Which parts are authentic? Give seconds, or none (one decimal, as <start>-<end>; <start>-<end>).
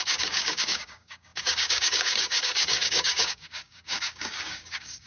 none